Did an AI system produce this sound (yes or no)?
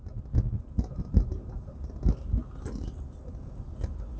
no